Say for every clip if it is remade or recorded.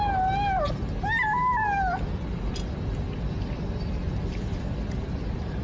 recorded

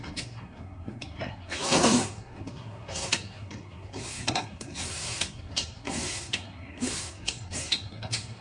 remade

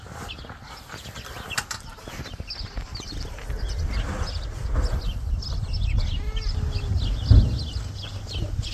recorded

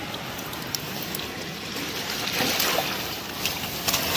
recorded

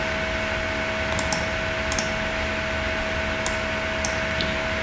recorded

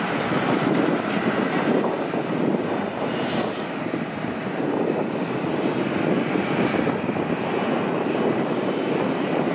recorded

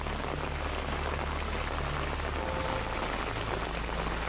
recorded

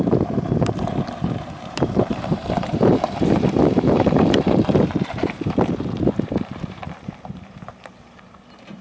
remade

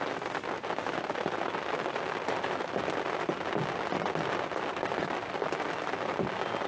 recorded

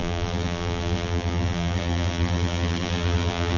remade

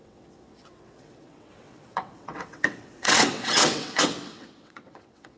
remade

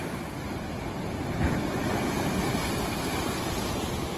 recorded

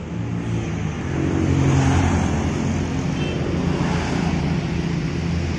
recorded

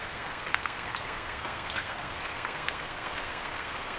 remade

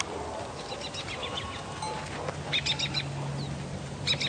recorded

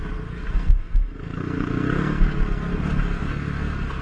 remade